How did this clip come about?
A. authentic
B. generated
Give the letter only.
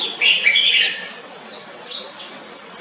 B